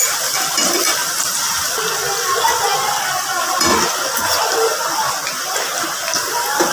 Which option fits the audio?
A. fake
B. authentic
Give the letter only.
B